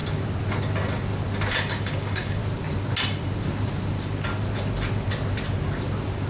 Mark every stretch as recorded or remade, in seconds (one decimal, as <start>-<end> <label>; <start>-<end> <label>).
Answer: 0.0-1.5 recorded; 1.5-2.4 remade; 2.4-6.3 recorded